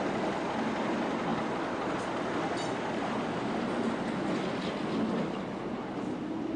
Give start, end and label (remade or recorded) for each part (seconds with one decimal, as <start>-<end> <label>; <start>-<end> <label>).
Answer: 0.0-6.6 recorded